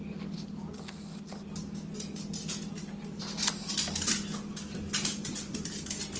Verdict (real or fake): real